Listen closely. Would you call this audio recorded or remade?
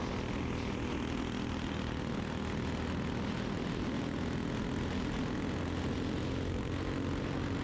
recorded